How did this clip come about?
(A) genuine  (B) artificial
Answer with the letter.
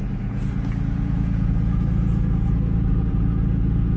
B